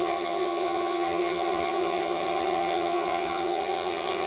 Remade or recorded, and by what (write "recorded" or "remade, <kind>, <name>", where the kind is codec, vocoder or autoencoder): remade, vocoder, HiFi-GAN